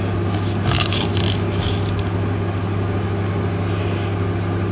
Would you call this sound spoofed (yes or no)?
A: no